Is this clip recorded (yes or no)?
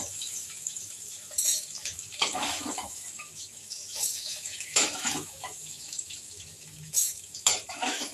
no